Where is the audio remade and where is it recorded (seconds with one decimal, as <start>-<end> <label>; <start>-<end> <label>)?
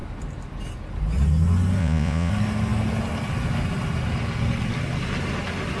0.0-1.8 recorded; 1.8-2.3 remade; 2.3-5.8 recorded